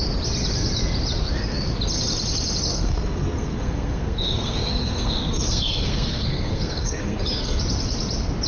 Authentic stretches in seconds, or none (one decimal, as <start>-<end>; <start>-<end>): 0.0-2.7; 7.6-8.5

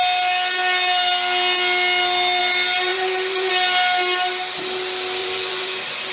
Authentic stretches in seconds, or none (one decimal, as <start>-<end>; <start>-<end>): 0.0-2.9; 3.5-5.2

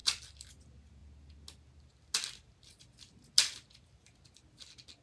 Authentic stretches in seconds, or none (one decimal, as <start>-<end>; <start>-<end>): 0.5-5.0

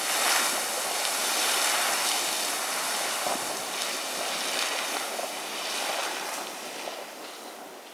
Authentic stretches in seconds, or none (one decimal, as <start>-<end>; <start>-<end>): 0.0-7.9

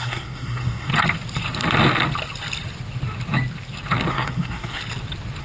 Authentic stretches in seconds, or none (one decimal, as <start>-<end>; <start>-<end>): 0.9-4.1; 4.8-5.4

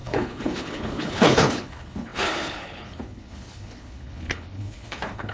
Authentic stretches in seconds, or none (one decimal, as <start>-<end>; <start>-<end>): none

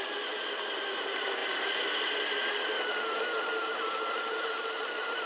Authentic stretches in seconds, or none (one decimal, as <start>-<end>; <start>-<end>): none

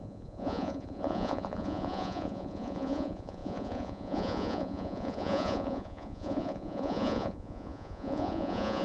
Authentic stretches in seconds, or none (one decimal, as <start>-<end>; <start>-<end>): none